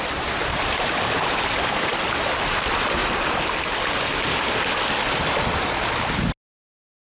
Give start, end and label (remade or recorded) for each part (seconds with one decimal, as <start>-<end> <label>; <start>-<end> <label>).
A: 0.0-1.9 remade; 1.9-2.4 recorded; 2.4-3.0 remade; 3.0-7.0 recorded

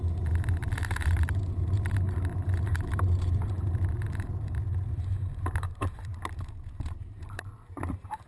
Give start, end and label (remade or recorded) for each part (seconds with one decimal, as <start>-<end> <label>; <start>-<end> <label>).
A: 0.0-6.1 remade; 6.1-7.0 recorded; 7.0-8.3 remade

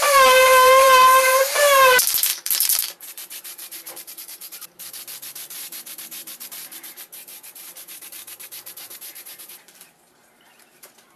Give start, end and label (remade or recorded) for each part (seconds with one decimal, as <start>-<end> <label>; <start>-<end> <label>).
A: 0.0-11.2 remade

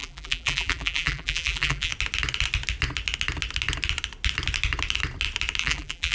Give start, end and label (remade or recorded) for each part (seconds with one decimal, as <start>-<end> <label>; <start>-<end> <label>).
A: 0.0-1.9 remade; 1.9-5.6 recorded; 5.6-6.1 remade

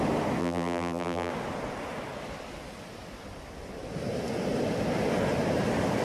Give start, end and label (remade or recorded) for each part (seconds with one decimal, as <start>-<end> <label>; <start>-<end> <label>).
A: 0.0-0.4 recorded; 0.4-1.3 remade; 1.3-6.0 recorded

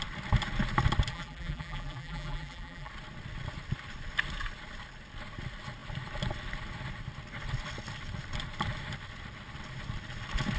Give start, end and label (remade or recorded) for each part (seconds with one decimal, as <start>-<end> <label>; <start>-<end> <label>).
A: 0.0-1.1 recorded; 1.1-2.9 remade; 2.9-10.6 recorded